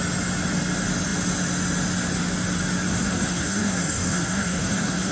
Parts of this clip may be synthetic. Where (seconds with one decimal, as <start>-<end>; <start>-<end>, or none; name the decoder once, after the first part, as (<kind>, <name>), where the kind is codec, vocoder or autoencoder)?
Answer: 2.9-5.1 (codec, SNAC)